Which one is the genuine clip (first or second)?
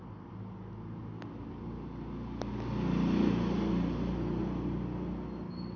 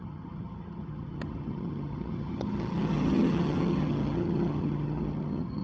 first